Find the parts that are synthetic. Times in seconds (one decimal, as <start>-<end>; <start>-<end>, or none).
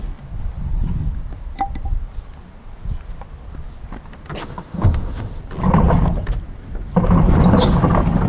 4.4-5.4